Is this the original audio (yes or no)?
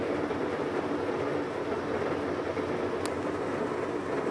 yes